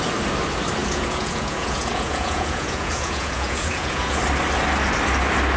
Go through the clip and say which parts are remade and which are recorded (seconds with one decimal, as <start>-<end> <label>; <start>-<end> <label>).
0.0-0.8 recorded; 0.8-4.2 remade; 4.2-5.6 recorded